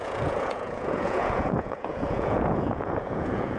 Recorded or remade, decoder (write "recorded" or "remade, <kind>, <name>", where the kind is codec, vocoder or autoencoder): remade, vocoder, Vocos